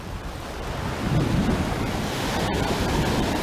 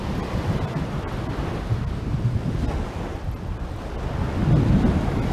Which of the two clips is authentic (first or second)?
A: second